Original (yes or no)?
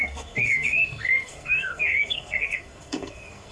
no